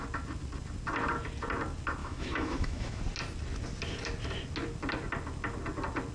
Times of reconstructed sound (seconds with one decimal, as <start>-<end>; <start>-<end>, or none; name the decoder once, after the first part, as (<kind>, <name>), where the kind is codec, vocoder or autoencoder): 2.0-3.0 (autoencoder, DAC-VAE)